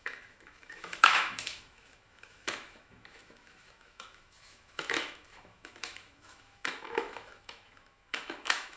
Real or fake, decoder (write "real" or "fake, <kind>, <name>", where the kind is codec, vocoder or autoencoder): fake, autoencoder, DAC-VAE